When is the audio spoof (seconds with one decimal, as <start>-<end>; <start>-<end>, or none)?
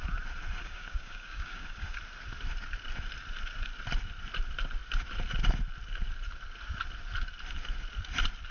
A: 0.6-2.0